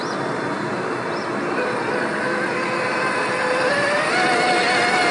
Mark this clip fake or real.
real